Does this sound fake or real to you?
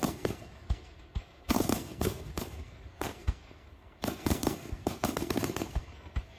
fake